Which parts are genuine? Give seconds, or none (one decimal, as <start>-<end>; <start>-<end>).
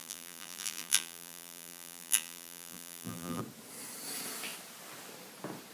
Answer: 3.4-5.7